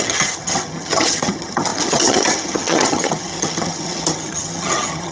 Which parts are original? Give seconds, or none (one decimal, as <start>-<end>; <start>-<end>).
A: none